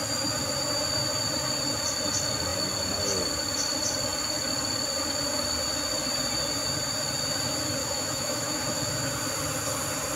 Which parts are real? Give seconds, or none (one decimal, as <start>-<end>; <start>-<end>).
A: 0.0-7.8; 8.5-10.2